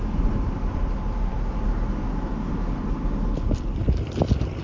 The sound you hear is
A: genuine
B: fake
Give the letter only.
A